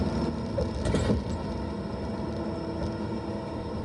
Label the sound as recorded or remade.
recorded